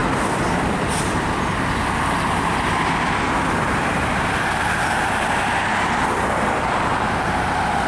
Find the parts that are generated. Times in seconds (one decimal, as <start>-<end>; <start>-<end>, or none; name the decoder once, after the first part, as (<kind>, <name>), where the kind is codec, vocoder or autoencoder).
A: none